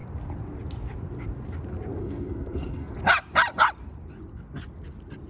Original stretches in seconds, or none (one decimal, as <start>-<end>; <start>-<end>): 0.0-2.0; 2.9-5.3